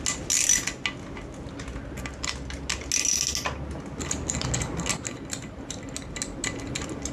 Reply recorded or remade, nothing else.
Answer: recorded